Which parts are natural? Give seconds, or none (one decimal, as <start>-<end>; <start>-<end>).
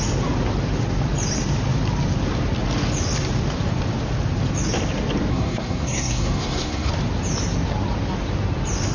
0.0-5.3; 6.9-8.9